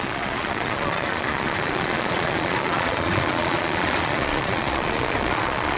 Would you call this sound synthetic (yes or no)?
yes